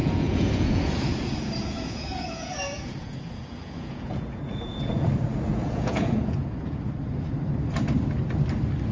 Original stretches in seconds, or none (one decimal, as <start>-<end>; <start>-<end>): 5.1-5.5; 6.8-8.9